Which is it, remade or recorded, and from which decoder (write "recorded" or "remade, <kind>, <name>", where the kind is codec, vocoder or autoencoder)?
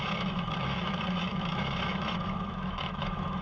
remade, autoencoder, DAC-VAE